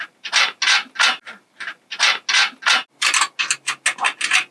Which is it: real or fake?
real